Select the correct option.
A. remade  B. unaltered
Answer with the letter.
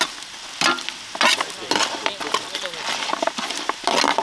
B